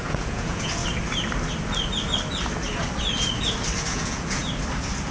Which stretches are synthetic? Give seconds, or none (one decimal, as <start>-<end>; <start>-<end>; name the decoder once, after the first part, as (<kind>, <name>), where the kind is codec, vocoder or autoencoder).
0.0-0.8 (vocoder, Vocos); 3.9-4.4